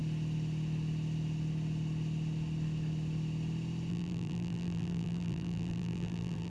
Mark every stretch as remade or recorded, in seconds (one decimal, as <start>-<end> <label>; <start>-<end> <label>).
0.0-3.9 recorded; 3.9-6.5 remade

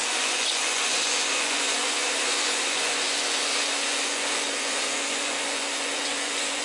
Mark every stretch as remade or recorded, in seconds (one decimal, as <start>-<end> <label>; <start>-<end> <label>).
0.0-6.6 remade

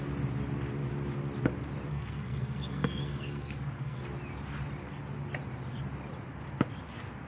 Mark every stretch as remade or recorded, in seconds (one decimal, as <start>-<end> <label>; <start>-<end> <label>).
0.0-1.9 recorded; 1.9-4.0 remade; 4.0-7.3 recorded

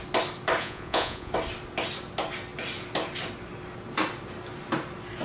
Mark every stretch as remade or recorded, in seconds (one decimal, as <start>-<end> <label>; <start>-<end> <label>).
0.0-0.6 recorded; 0.6-1.3 remade; 1.3-5.2 recorded

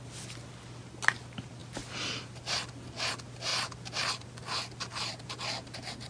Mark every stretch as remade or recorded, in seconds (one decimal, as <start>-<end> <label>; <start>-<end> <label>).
0.0-6.1 recorded

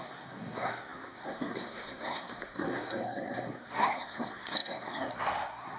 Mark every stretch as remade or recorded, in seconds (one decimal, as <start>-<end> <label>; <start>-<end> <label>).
0.0-5.8 remade

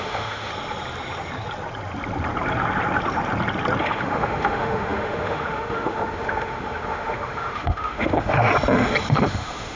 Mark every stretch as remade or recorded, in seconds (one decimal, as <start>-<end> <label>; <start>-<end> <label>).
0.0-0.5 remade; 0.5-3.8 recorded; 3.8-8.5 remade; 8.5-9.1 recorded; 9.1-9.8 remade